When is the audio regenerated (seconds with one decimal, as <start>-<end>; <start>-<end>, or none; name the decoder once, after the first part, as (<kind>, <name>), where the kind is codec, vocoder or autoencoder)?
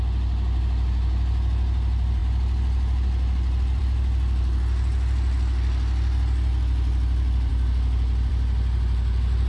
none